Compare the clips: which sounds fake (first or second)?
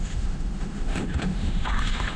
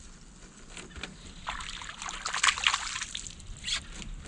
first